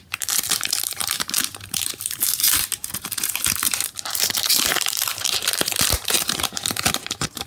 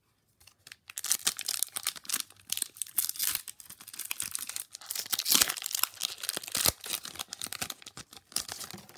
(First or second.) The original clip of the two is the second